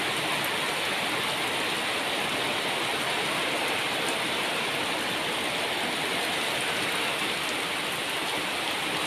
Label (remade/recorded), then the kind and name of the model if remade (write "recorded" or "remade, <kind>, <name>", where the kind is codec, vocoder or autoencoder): recorded